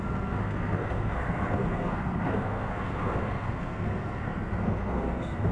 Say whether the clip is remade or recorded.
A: remade